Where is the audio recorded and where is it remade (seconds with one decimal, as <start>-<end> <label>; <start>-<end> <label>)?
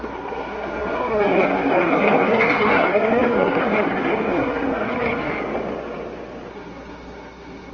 0.0-5.3 remade; 5.3-6.5 recorded; 6.5-7.7 remade